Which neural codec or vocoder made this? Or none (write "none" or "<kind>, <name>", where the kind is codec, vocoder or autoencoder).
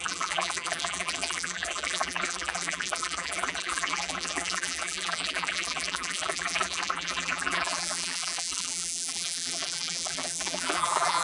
vocoder, BigVGAN v2